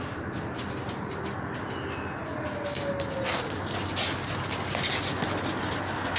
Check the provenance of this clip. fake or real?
real